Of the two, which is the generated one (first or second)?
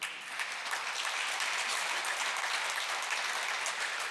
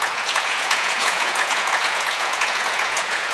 second